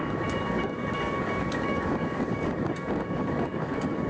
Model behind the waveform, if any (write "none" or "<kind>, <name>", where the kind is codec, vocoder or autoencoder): codec, DAC